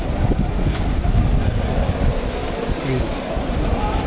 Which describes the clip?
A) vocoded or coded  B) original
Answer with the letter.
B